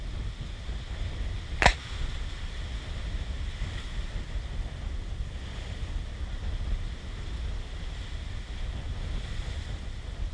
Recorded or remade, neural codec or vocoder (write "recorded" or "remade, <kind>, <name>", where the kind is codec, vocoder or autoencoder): recorded